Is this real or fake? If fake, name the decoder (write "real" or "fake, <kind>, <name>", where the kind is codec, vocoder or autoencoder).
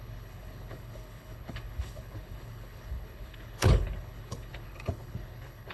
fake, codec, HILCodec